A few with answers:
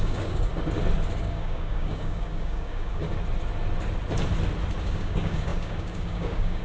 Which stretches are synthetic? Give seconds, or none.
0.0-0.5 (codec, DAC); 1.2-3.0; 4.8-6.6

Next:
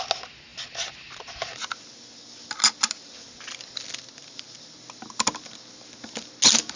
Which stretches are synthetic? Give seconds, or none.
none

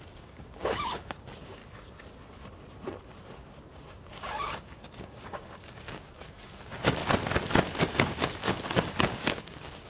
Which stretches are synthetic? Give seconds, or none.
0.0-1.6 (codec, DAC); 3.7-7.0; 7.9-9.9

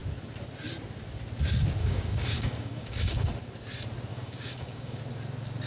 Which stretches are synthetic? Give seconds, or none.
1.8-3.3 (codec, DAC); 4.1-5.0

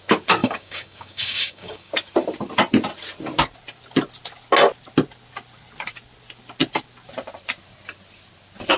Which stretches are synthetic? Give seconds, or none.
0.4-1.9 (codec, DAC)